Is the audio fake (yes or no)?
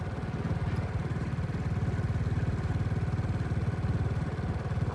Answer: no